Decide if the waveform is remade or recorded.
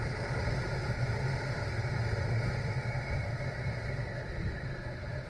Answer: recorded